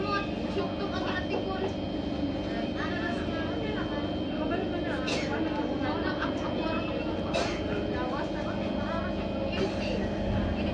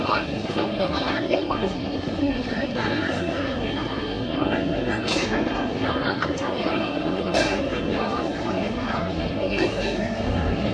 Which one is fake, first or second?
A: second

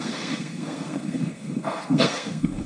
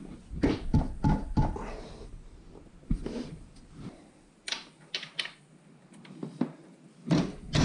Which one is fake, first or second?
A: first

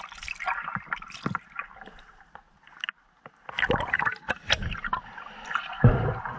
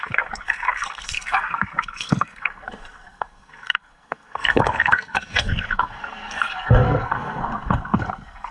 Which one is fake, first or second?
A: second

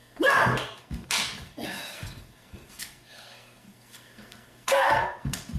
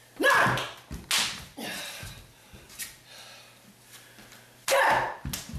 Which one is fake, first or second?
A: first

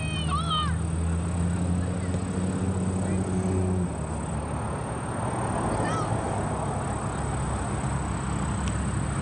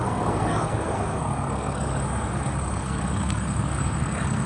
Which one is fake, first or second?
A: second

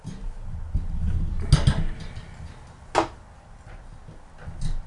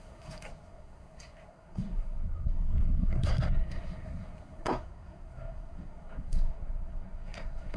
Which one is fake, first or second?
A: second